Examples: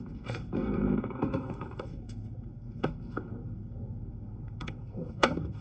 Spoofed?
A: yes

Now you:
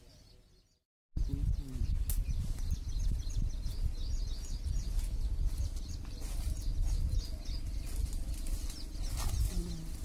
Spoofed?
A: no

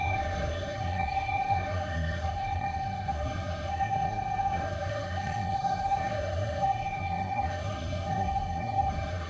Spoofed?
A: yes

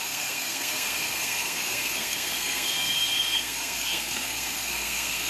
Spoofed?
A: yes